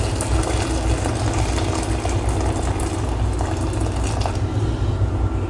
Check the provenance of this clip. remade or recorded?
recorded